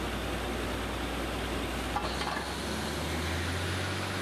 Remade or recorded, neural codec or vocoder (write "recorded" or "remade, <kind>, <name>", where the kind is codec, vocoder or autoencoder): recorded